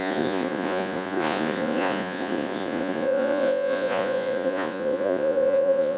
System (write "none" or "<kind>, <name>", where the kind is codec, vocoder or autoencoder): vocoder, Vocos